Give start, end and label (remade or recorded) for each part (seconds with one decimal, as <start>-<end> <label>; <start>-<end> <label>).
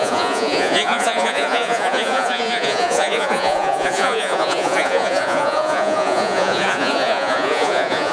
0.0-8.1 remade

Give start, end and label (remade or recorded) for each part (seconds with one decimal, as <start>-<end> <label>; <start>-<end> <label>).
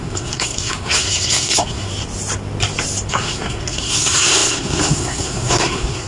0.0-1.9 remade; 1.9-3.1 recorded; 3.1-6.1 remade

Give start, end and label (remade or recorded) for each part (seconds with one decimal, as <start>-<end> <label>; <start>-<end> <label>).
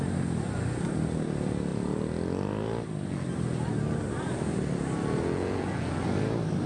0.0-6.7 recorded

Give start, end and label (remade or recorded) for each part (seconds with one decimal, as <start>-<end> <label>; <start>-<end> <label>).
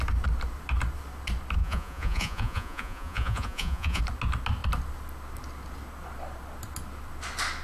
0.0-1.6 recorded; 1.6-4.0 remade; 4.0-7.6 recorded